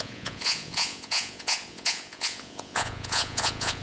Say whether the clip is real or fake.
fake